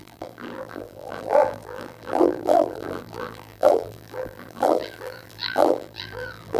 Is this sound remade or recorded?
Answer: remade